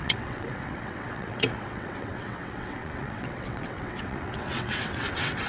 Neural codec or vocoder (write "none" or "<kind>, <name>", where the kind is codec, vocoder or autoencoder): vocoder, WaveNeXt